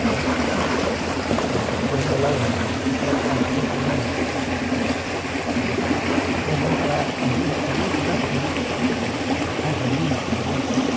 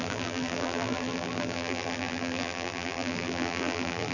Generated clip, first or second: second